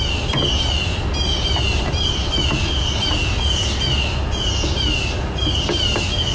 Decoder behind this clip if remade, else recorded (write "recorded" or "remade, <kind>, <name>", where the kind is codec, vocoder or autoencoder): recorded